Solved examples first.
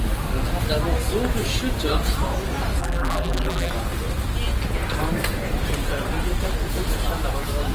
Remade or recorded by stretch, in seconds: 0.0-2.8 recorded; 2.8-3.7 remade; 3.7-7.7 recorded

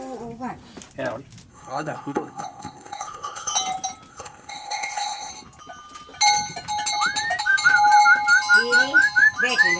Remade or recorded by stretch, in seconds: 0.0-1.5 recorded; 1.5-3.5 remade; 3.5-4.1 recorded; 4.1-5.3 remade; 5.3-9.8 recorded

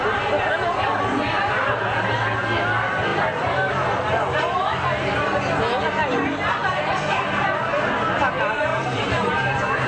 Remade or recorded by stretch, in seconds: 0.0-3.1 recorded; 3.1-3.7 remade; 3.7-8.7 recorded; 8.7-9.9 remade

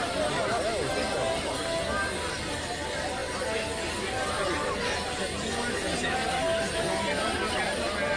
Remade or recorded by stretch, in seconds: 0.0-8.2 recorded